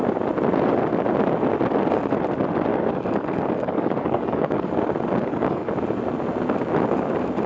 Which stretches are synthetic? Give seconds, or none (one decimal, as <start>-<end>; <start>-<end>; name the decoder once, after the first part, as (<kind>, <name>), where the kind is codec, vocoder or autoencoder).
2.7-4.7 (codec, DAC); 5.2-5.7

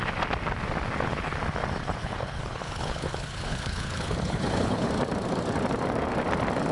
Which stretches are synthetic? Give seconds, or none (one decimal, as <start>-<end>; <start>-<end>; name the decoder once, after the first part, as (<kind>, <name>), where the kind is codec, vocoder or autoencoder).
2.0-4.9 (codec, HILCodec)

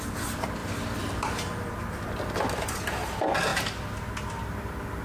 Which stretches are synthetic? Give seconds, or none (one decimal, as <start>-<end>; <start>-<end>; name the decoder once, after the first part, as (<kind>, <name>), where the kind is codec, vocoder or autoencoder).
none

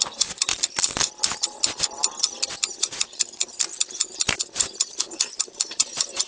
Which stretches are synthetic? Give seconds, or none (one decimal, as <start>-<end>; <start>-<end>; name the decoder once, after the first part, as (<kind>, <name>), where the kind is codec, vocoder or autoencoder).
0.0-0.5 (vocoder, BigVGAN v2); 2.9-6.3

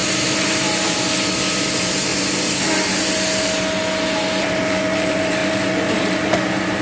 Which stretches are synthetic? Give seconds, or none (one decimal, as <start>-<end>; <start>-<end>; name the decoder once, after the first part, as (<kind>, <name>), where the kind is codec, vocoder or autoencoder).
0.0-2.1 (vocoder, BigVGAN v2); 4.4-6.8